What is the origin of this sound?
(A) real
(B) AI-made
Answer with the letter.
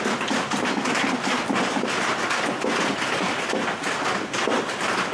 A